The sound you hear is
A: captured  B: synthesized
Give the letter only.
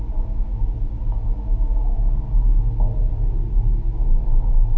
A